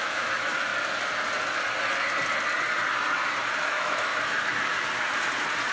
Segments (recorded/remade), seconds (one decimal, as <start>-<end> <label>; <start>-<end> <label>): 0.0-0.7 remade; 0.7-3.6 recorded; 3.6-4.1 remade; 4.1-5.7 recorded